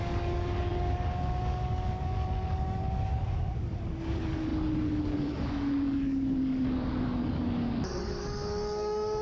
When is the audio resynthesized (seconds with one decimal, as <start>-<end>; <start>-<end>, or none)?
0.0-9.2